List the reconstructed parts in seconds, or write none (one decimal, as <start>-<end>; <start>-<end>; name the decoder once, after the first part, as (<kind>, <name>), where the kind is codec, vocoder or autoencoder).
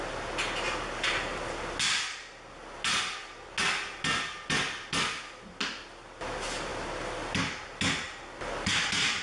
none